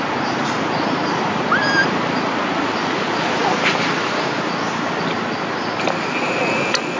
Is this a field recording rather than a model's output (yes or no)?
yes